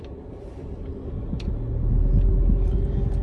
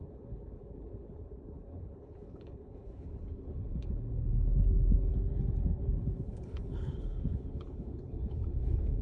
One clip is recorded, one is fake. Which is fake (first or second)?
second